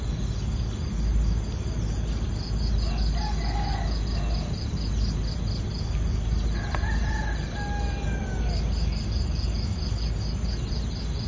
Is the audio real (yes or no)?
yes